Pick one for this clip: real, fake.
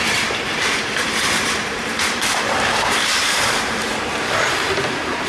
fake